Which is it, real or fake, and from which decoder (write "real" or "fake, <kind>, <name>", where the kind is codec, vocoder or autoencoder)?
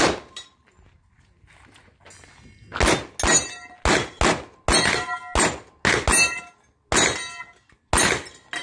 real